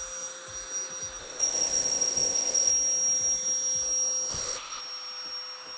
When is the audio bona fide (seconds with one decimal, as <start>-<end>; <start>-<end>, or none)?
0.0-1.2; 2.7-4.3; 4.8-5.8